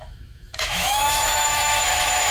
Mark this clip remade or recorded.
remade